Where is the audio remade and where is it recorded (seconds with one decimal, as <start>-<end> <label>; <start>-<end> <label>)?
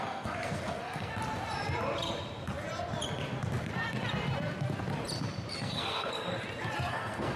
0.0-1.1 remade; 1.1-5.5 recorded; 5.5-6.3 remade; 6.3-6.9 recorded; 6.9-7.4 remade